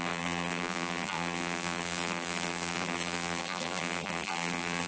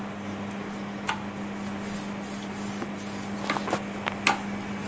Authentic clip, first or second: second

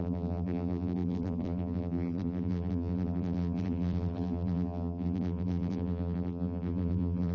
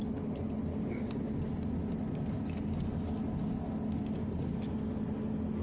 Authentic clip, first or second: second